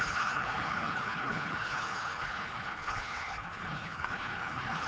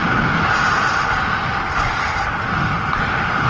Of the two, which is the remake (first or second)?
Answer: first